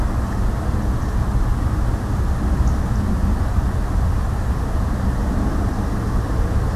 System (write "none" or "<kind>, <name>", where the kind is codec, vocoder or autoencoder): none